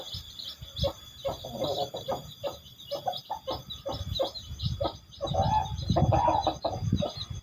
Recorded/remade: recorded